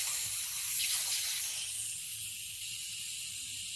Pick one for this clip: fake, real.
real